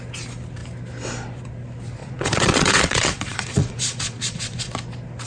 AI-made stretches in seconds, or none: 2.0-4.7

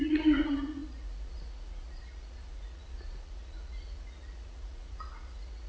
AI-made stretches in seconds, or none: 0.0-5.7

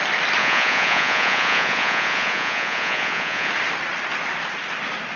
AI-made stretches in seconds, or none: 0.4-3.5

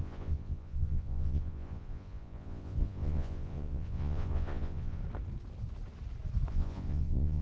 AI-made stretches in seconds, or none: 0.0-5.0; 6.5-7.4